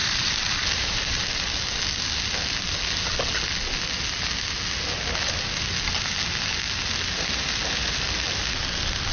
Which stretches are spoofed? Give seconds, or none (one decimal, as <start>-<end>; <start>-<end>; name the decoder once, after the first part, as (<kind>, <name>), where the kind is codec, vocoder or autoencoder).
0.0-1.2 (vocoder, BigVGAN v2)